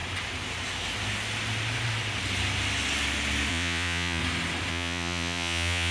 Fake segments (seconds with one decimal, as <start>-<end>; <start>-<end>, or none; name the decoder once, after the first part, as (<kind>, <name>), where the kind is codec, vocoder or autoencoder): 3.5-4.2 (vocoder, Vocos); 4.7-5.9